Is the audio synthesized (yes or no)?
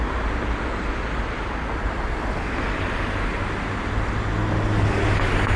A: no